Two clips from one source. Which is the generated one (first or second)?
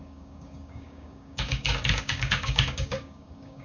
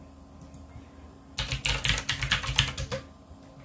first